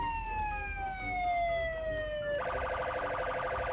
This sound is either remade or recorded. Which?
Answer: recorded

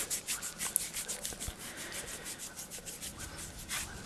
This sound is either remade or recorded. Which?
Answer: recorded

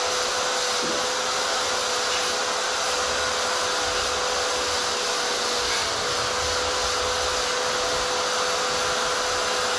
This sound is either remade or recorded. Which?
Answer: recorded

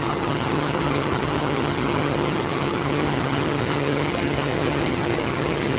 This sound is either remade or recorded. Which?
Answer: remade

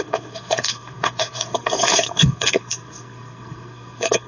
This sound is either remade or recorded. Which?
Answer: remade